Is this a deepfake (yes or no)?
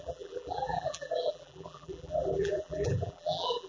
yes